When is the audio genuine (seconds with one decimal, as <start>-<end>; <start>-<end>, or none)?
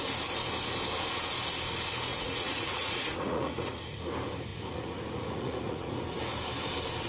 0.0-2.1; 4.0-4.5; 6.0-7.1